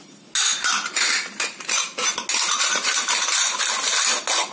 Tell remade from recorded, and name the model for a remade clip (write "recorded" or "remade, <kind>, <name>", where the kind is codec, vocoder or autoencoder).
recorded